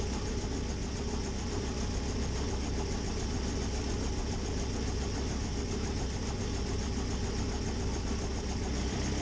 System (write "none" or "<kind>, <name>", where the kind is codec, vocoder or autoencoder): none